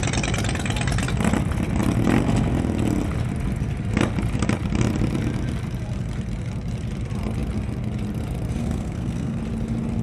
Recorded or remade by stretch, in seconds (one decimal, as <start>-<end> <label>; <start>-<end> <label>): 0.0-8.6 recorded; 8.6-9.4 remade; 9.4-10.0 recorded